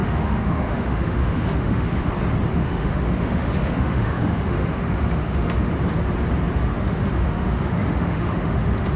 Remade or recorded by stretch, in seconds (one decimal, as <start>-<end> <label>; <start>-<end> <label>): 0.0-2.1 remade; 2.1-2.5 recorded; 2.5-5.7 remade; 5.7-6.7 recorded; 6.7-9.0 remade